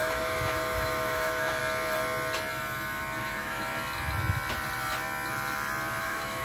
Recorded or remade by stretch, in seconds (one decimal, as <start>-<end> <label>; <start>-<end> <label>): 0.0-1.6 remade; 1.6-3.2 recorded; 3.2-3.7 remade; 3.7-6.0 recorded; 6.0-6.4 remade

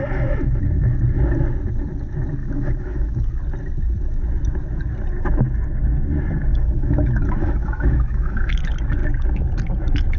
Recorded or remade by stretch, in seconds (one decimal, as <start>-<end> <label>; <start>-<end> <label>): 0.0-2.4 recorded; 2.4-3.3 remade; 3.3-6.5 recorded; 6.5-8.6 remade; 8.6-10.2 recorded